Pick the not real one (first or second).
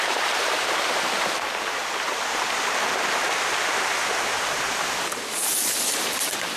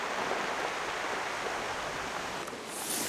first